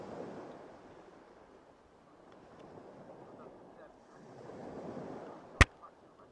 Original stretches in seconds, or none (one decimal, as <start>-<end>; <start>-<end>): 0.0-6.3